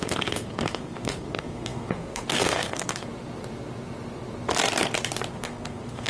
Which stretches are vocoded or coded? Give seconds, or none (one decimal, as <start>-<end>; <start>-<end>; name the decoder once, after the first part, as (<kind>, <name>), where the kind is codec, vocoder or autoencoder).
0.0-3.1 (codec, SNAC); 5.3-6.1